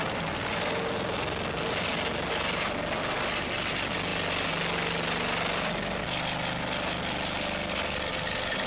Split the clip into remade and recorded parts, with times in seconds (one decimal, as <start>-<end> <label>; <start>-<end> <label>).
0.0-8.7 recorded